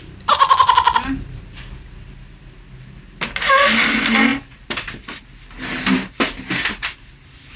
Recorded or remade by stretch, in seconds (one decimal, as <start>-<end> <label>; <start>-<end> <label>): 0.0-7.6 recorded